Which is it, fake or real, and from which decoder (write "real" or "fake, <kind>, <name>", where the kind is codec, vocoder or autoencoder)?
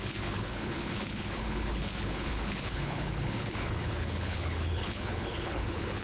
fake, codec, HILCodec